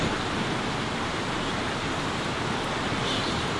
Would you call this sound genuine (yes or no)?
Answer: yes